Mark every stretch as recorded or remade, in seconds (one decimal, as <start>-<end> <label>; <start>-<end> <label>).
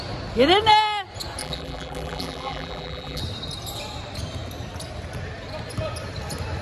0.0-1.4 recorded; 1.4-3.2 remade; 3.2-6.6 recorded